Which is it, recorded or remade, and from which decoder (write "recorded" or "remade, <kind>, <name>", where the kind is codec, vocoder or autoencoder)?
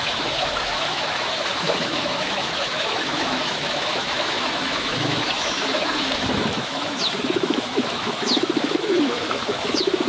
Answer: remade, autoencoder, DAC-VAE